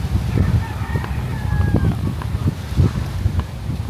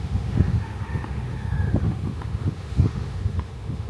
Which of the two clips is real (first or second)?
first